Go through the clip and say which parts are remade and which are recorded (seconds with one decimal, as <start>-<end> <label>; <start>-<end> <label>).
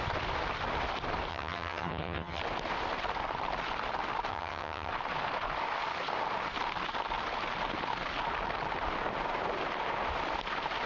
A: 0.0-1.3 recorded; 1.3-2.4 remade; 2.4-4.3 recorded; 4.3-4.9 remade; 4.9-10.9 recorded